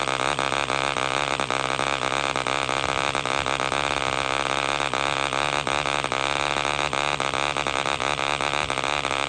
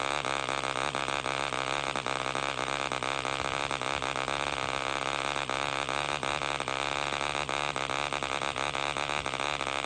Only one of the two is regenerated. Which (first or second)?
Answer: first